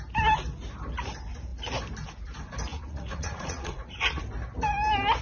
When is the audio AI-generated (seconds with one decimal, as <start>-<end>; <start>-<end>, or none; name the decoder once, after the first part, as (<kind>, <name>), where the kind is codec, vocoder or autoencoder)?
2.7-4.2 (vocoder, Vocos)